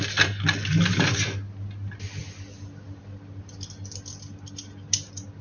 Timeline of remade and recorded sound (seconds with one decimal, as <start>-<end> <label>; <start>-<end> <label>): 0.0-5.4 recorded